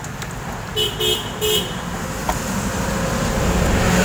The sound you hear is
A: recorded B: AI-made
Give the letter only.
A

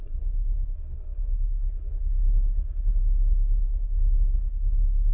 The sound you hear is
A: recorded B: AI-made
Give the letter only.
B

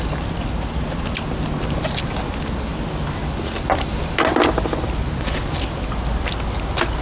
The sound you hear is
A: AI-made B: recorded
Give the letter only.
B